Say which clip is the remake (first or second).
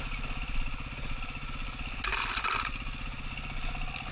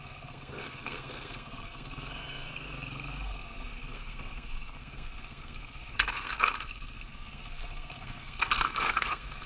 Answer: second